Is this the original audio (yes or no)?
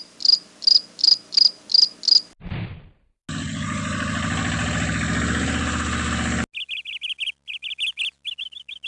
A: yes